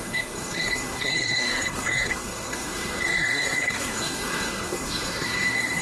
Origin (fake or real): fake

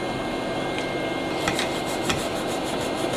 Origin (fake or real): real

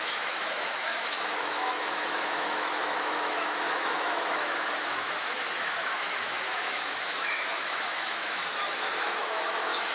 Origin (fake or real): fake